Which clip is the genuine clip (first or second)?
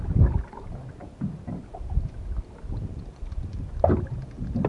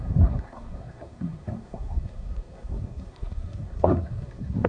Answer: first